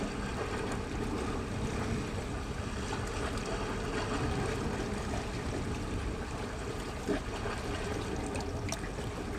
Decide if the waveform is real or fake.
real